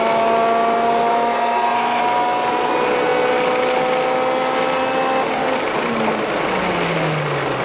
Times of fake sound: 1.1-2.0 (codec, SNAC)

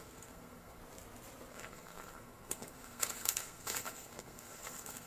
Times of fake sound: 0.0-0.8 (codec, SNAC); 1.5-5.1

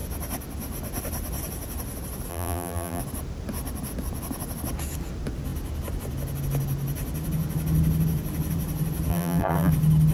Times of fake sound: 2.3-3.0 (vocoder, BigVGAN v2); 9.1-9.7

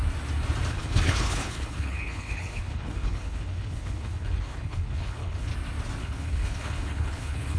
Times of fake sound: 0.7-5.5 (codec, HILCodec); 6.0-7.6

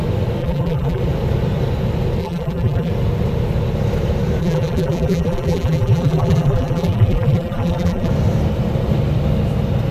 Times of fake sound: 0.4-1.0 (vocoder, BigVGAN v2); 2.2-2.9; 4.4-8.1

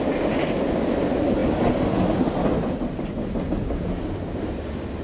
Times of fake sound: none

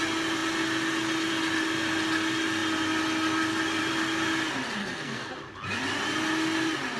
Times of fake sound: 4.8-5.3 (codec, SNAC)

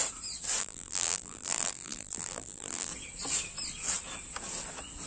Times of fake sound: 0.6-2.9 (vocoder, BigVGAN v2)